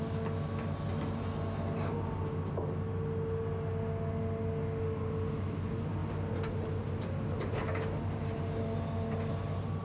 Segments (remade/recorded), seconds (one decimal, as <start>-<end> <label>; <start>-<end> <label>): 0.0-9.8 recorded